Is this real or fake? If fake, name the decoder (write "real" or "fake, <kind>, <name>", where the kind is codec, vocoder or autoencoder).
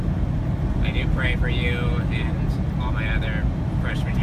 real